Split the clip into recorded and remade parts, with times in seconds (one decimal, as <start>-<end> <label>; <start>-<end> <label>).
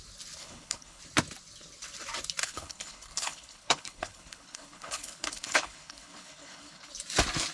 0.0-0.4 recorded; 0.4-1.0 remade; 1.0-2.4 recorded; 2.4-6.9 remade; 6.9-7.5 recorded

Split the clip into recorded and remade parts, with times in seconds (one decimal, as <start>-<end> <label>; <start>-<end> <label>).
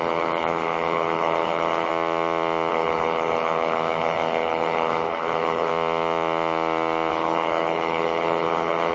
0.0-1.9 remade; 1.9-2.7 recorded; 2.7-5.7 remade; 5.7-7.1 recorded; 7.1-8.9 remade